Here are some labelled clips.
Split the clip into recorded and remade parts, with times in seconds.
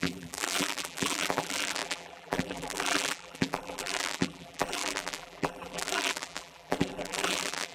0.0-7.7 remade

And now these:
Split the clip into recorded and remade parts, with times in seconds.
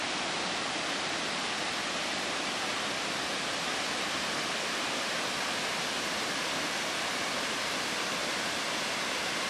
0.0-9.5 remade